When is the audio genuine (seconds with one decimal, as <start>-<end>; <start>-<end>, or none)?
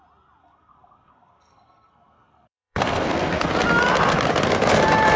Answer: 0.0-0.4; 3.5-5.2